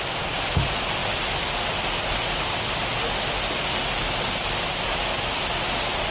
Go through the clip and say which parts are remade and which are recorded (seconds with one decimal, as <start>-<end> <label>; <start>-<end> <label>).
0.0-6.1 recorded